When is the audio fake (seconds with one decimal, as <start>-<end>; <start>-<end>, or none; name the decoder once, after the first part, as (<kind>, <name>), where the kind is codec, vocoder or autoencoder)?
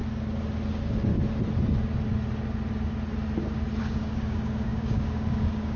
0.7-1.1 (codec, DAC); 3.8-5.8